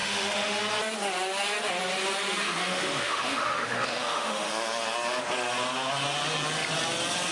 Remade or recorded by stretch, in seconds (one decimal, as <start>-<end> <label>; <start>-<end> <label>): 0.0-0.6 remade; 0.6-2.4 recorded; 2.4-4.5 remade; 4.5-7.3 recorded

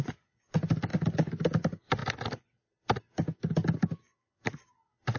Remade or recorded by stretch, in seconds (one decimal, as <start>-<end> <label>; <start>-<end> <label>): 0.0-5.2 recorded

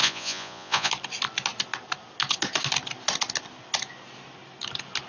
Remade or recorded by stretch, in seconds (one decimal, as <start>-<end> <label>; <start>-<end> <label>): 0.0-0.9 remade; 0.9-5.1 recorded

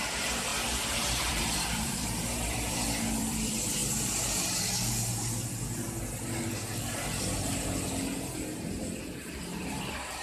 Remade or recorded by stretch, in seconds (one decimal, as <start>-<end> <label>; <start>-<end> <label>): 0.0-3.8 remade; 3.8-8.6 recorded; 8.6-10.2 remade